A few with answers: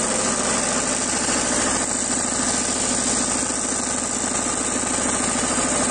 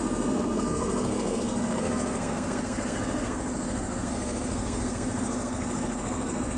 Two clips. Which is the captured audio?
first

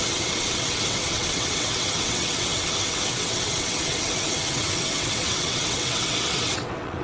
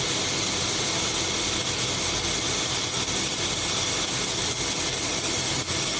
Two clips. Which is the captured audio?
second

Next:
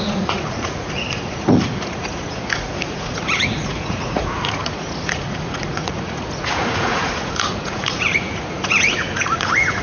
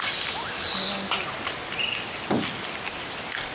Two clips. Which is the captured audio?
second